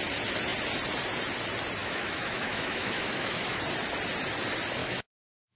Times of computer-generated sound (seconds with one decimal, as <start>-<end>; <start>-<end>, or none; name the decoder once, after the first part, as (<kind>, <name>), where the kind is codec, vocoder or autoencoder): 1.8-3.6 (autoencoder, DAC-VAE); 4.8-5.6